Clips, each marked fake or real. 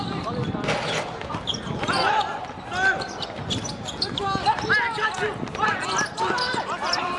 real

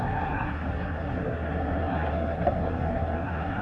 fake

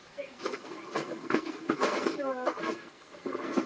fake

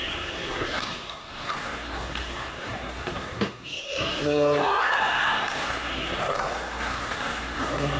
fake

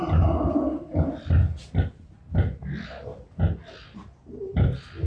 real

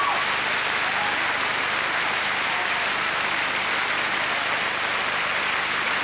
real